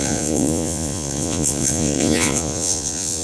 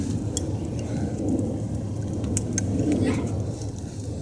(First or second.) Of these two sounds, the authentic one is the second